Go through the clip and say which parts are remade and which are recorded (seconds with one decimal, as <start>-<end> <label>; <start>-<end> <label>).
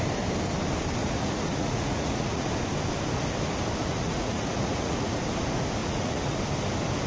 0.0-1.0 recorded; 1.0-2.5 remade; 2.5-3.9 recorded; 3.9-5.2 remade; 5.2-5.8 recorded; 5.8-6.4 remade; 6.4-7.1 recorded